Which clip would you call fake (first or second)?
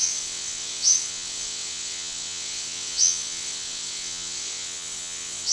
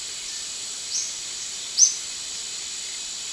first